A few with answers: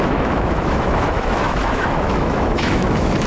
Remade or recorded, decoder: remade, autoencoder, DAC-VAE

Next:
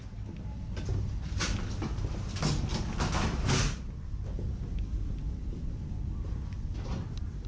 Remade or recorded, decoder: recorded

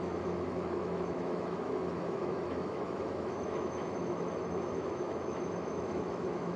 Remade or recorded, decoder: remade, autoencoder, DAC-VAE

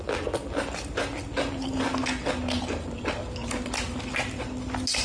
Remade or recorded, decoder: recorded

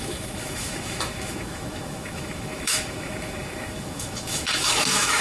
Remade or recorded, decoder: remade, autoencoder, DAC-VAE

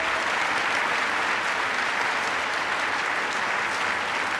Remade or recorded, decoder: recorded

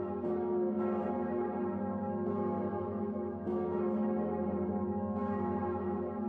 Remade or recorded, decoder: remade, autoencoder, DAC-VAE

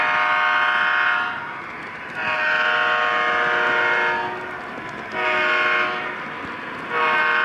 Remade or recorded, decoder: recorded